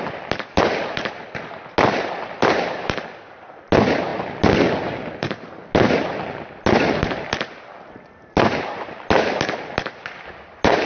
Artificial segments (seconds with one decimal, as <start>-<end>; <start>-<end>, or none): none